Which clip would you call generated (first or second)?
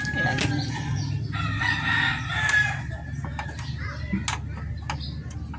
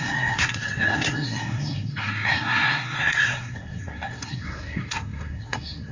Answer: second